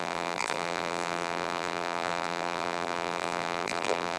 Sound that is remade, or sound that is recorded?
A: remade